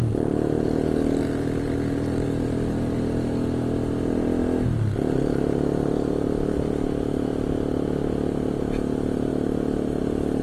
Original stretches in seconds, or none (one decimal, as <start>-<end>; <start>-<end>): 0.0-10.4